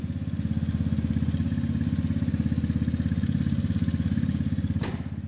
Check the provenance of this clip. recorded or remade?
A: recorded